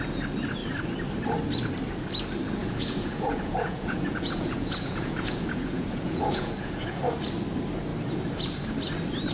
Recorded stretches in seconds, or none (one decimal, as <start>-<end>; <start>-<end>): 0.0-2.6; 7.0-9.3